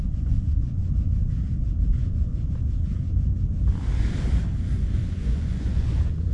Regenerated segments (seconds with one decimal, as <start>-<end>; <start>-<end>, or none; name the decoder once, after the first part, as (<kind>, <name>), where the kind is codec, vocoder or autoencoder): 0.0-0.8 (vocoder, Vocos); 1.7-2.9; 4.8-6.3